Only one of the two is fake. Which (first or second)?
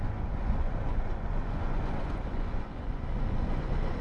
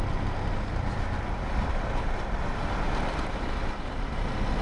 first